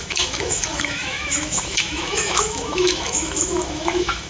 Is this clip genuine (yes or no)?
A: no